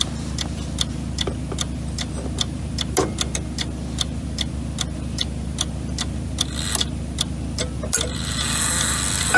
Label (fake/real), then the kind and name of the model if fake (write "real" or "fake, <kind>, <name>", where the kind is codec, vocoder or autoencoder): real